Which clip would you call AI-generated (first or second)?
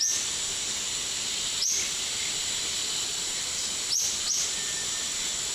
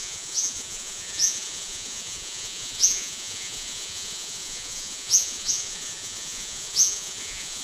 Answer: second